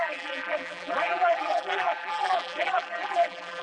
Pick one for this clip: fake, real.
fake